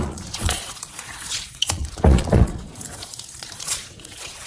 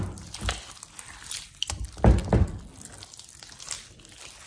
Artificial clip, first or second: first